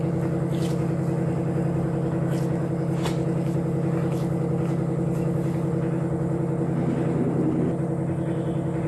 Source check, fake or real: real